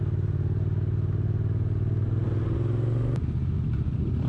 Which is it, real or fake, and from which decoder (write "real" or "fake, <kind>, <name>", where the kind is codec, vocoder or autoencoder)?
real